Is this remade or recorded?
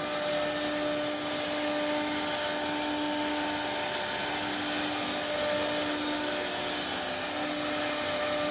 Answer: recorded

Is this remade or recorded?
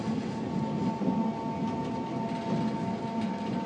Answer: recorded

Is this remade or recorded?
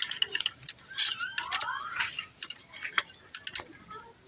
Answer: recorded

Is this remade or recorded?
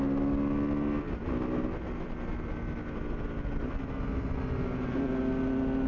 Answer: recorded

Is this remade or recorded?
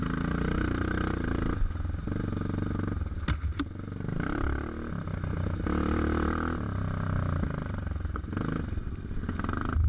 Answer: recorded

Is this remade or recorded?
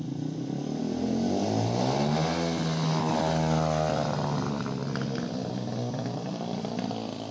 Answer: recorded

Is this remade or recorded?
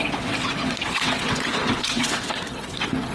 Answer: remade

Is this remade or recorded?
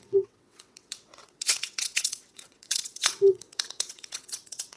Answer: remade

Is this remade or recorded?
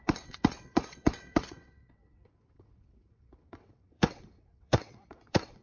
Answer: remade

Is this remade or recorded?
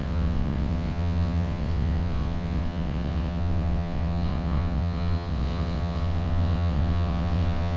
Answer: remade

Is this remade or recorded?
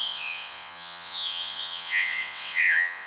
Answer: remade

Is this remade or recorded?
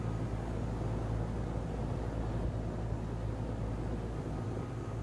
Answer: recorded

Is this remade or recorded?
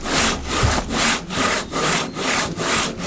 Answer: recorded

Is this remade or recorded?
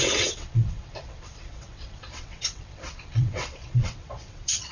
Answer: remade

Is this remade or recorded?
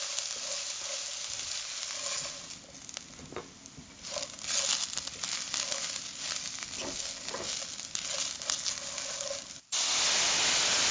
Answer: recorded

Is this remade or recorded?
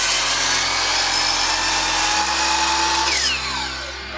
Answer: recorded